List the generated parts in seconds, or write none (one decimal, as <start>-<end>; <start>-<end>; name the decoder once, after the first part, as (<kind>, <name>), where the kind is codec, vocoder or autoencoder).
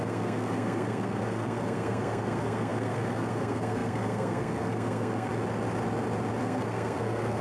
0.0-5.3 (codec, SNAC); 6.4-7.4